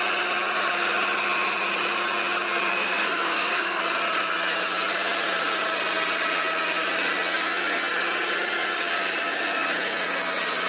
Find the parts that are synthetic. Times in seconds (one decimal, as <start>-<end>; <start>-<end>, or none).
2.7-3.8